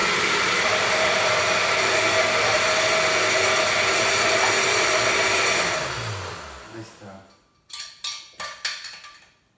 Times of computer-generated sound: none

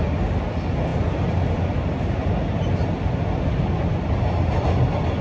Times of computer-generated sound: none

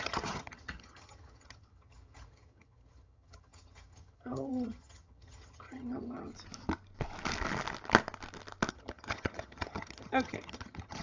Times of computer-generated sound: 0.0-6.3 (vocoder, HiFi-GAN); 8.7-11.0